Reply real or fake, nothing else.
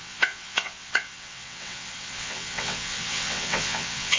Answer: fake